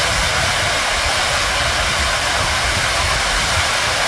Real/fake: real